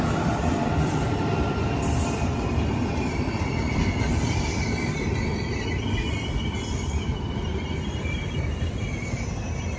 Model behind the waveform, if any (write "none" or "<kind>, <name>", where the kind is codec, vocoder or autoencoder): vocoder, BigVGAN v2